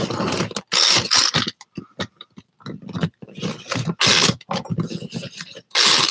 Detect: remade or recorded recorded